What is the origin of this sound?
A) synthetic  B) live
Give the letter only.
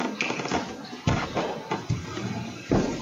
B